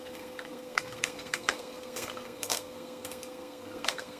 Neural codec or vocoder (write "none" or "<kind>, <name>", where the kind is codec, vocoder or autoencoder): codec, SNAC